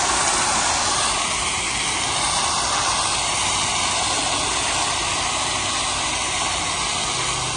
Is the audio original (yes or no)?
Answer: yes